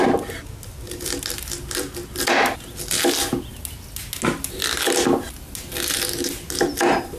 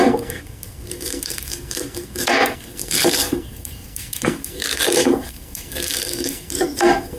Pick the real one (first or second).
first